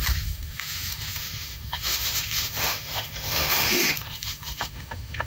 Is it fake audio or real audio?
fake